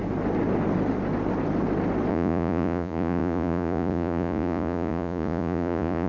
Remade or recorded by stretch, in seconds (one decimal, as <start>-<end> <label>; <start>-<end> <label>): 0.0-2.1 recorded; 2.1-6.1 remade